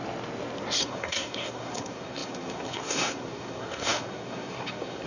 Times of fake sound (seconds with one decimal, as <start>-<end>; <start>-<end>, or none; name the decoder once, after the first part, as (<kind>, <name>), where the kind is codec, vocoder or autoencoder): 0.8-5.1 (codec, SNAC)